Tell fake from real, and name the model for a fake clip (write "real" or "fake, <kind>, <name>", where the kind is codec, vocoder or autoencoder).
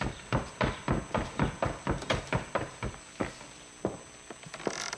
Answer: fake, vocoder, BigVGAN v2